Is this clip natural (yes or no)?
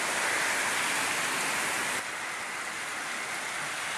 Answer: yes